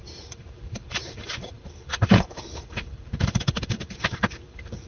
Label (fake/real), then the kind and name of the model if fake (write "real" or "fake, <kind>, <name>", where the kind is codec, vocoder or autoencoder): fake, vocoder, BigVGAN v2